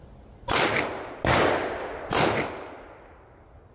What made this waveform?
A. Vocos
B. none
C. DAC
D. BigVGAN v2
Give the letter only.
B